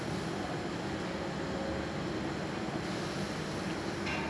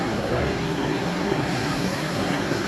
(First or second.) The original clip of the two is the first